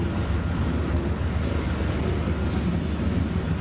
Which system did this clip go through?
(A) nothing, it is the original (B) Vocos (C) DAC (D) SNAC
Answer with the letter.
A